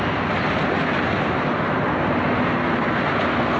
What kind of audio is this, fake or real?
real